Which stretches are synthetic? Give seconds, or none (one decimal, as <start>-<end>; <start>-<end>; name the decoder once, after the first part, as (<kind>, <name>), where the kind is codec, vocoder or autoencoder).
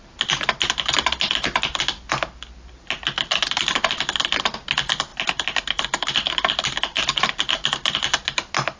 none